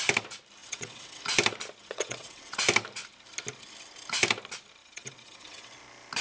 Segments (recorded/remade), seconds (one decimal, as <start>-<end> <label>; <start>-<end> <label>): 0.0-0.6 recorded; 0.6-1.2 remade; 1.2-1.8 recorded; 1.8-2.6 remade; 2.6-4.8 recorded; 4.8-5.7 remade; 5.7-6.2 recorded